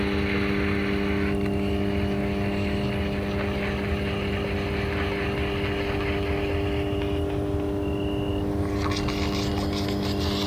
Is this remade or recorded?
recorded